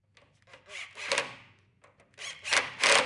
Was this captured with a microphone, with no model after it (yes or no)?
yes